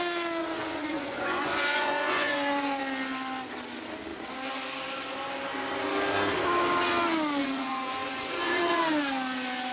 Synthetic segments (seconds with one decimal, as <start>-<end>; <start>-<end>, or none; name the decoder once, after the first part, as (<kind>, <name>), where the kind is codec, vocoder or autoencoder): 0.4-2.8 (vocoder, Vocos); 7.4-8.8